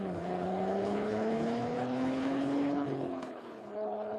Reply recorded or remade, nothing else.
remade